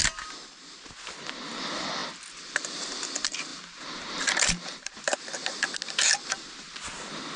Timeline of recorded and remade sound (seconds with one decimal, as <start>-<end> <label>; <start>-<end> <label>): 0.0-3.5 recorded; 3.5-5.3 remade; 5.3-7.4 recorded